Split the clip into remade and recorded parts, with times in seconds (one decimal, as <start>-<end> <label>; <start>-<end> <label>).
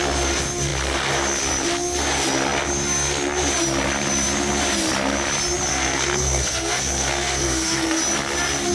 0.0-5.7 recorded; 5.7-8.0 remade; 8.0-8.7 recorded